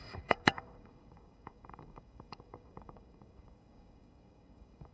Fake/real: fake